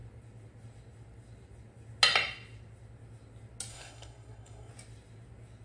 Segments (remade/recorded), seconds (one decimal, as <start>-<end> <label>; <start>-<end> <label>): 0.0-3.7 recorded; 3.7-4.7 remade; 4.7-5.6 recorded